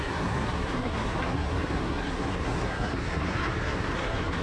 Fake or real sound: fake